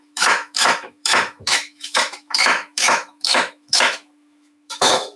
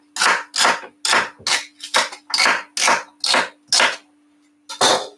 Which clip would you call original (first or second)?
second